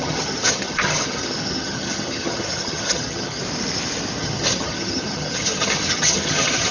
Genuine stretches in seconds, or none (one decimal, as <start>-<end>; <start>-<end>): 3.4-4.2